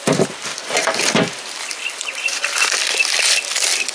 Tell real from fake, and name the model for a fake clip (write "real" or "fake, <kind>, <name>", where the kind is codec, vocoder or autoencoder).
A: real